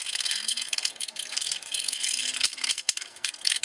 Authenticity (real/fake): fake